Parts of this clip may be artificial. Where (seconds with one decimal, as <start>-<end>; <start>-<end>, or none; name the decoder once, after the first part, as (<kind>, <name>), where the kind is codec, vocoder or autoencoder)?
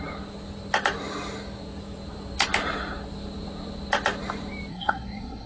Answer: 4.7-5.5 (codec, SNAC)